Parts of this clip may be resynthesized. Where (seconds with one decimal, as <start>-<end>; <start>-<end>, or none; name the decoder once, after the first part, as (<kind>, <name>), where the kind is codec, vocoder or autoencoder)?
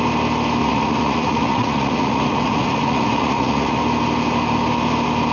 0.6-3.8 (vocoder, Vocos)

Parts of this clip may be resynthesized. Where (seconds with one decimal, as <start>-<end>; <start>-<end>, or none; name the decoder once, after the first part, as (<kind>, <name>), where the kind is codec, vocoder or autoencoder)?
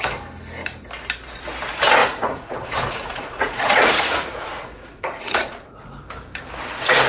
2.0-6.0 (vocoder, Vocos)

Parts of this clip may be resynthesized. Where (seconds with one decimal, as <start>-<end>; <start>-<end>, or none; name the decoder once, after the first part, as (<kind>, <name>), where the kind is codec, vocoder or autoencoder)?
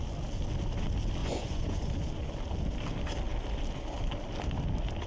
1.2-1.9 (vocoder, Vocos)